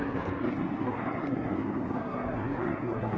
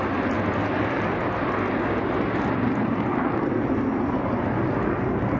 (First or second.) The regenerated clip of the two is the first